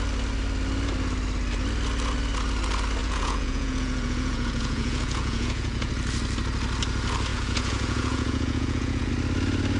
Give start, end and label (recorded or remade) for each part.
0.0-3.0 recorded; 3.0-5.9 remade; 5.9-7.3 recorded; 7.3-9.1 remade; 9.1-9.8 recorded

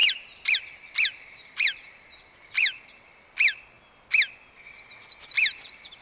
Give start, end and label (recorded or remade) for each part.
0.0-3.6 remade; 3.6-6.0 recorded